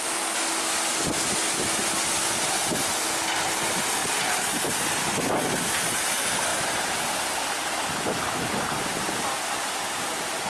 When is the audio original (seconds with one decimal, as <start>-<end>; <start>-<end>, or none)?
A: 0.0-10.5